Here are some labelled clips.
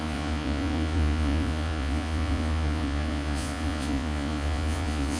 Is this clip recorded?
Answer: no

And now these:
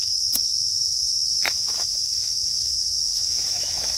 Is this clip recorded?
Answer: no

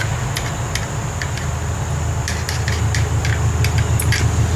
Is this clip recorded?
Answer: yes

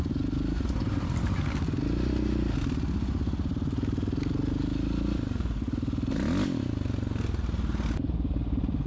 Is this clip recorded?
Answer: yes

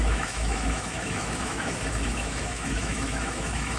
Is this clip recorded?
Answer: no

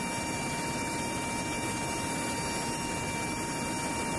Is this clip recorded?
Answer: yes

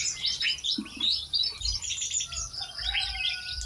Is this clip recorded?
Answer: no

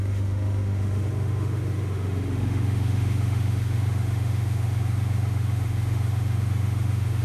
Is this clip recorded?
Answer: no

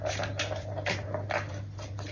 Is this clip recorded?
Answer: yes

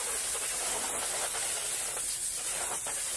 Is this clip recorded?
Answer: yes